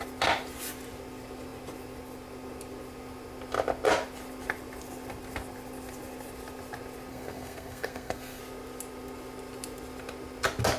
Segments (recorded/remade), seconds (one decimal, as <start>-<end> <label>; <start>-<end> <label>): 0.0-7.1 recorded; 7.1-8.4 remade; 8.4-10.8 recorded